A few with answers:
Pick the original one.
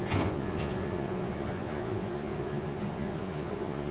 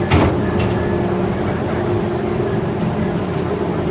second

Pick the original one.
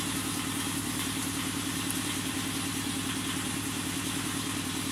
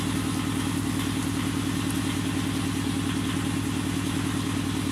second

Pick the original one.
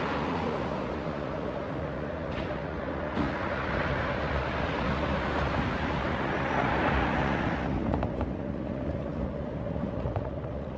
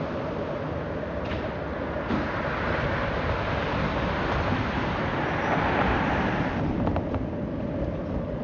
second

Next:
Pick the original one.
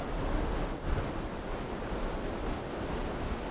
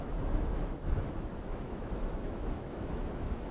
first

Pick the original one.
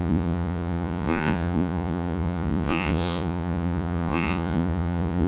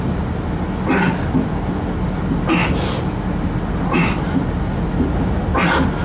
second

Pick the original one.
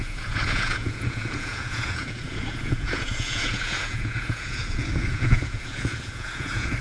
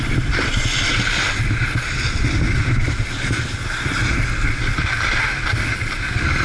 second